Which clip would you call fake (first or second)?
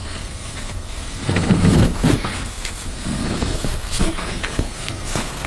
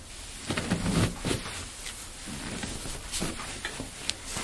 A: first